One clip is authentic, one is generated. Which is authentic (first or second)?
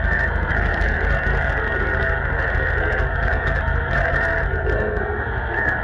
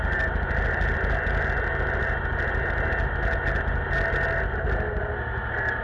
second